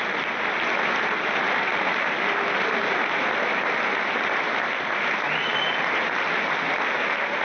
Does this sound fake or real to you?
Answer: real